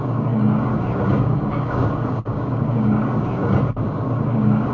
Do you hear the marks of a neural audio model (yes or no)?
yes